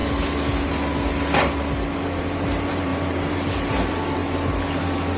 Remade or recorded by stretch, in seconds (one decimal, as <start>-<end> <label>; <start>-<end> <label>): 0.0-2.0 recorded; 2.0-4.2 remade; 4.2-5.2 recorded